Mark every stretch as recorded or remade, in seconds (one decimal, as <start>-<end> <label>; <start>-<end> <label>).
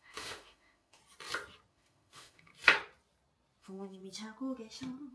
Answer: 0.0-1.0 remade; 1.0-1.7 recorded; 1.7-2.5 remade; 2.5-3.6 recorded; 3.6-4.0 remade; 4.0-5.1 recorded